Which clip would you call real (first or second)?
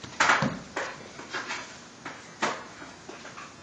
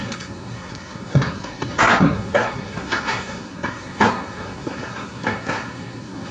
first